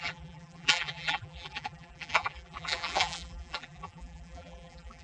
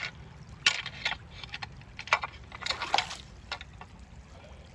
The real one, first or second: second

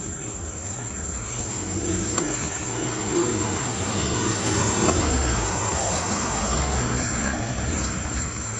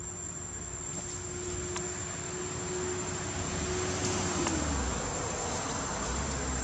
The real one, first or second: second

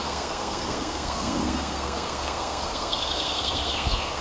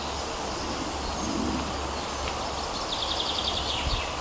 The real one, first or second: second